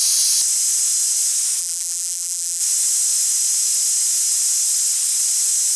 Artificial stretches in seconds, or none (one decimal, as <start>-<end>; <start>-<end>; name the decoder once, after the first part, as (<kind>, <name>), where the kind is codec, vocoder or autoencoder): 1.6-2.6 (vocoder, BigVGAN v2)